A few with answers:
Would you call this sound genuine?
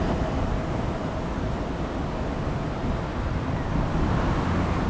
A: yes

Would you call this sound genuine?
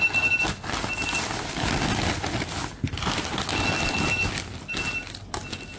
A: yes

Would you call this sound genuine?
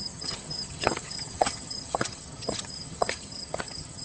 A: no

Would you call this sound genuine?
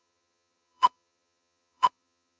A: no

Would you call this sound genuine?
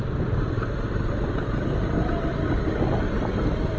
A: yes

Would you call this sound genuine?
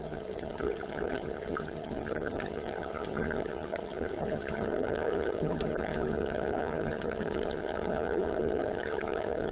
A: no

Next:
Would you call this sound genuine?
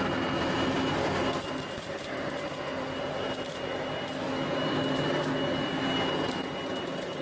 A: yes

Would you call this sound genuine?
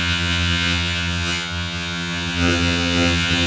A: no